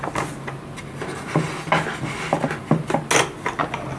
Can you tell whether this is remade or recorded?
recorded